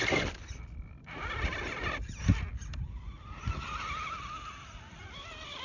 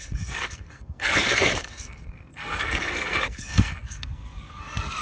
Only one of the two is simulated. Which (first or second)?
second